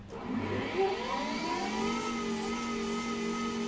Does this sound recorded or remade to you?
recorded